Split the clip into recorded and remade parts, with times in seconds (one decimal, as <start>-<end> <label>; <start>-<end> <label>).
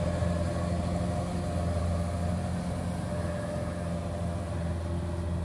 0.0-5.4 recorded